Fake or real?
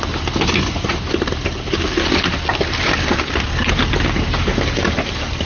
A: real